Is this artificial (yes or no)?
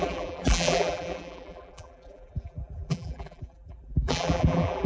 yes